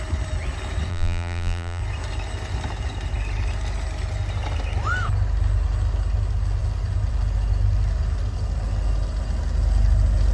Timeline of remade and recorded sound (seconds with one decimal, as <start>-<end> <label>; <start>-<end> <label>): 0.0-0.9 recorded; 0.9-1.8 remade; 1.8-10.3 recorded